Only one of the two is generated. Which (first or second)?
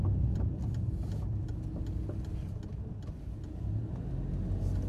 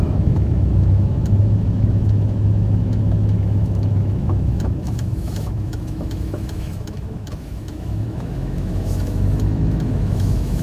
second